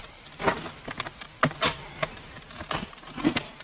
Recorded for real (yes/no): yes